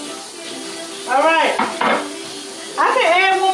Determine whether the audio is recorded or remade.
recorded